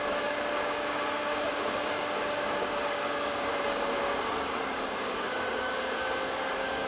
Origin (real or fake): fake